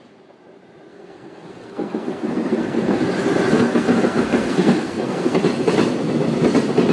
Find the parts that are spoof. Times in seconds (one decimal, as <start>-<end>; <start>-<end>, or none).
0.9-3.0; 3.5-5.4